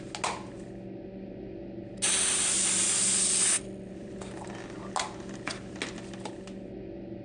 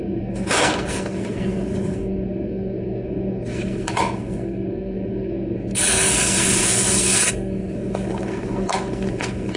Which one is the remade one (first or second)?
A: second